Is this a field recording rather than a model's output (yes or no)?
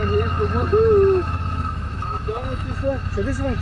no